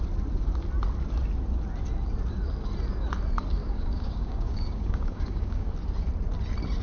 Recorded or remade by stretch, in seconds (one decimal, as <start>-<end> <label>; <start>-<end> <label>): 0.0-3.6 recorded; 3.6-5.7 remade; 5.7-6.8 recorded